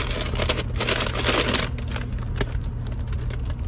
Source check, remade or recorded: recorded